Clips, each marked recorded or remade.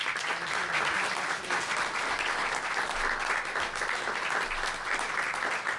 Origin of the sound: recorded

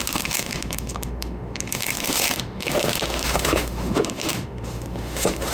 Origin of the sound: remade